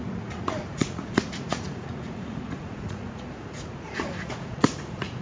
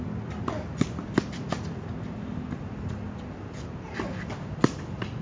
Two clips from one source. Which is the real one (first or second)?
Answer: second